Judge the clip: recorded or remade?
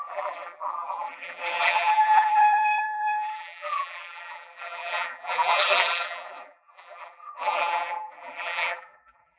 remade